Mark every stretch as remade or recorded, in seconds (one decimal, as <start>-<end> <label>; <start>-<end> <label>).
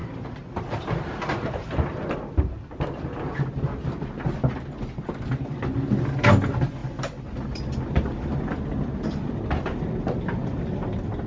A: 0.0-3.8 remade; 3.8-6.8 recorded; 6.8-8.2 remade; 8.2-11.3 recorded